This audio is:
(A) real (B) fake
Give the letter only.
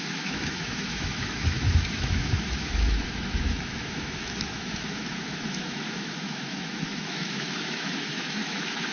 B